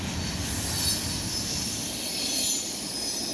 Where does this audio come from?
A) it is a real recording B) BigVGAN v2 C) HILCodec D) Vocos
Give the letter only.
A